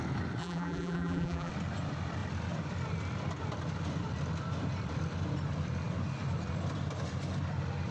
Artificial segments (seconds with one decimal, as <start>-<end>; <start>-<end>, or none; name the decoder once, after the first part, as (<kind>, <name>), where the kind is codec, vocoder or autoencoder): 0.4-1.5 (vocoder, BigVGAN v2)